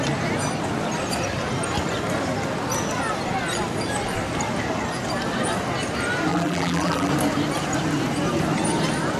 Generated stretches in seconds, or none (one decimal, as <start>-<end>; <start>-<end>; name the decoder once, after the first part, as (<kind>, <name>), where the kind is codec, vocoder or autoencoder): 6.3-7.1 (vocoder, BigVGAN v2)